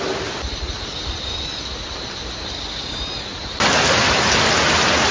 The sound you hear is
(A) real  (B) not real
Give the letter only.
A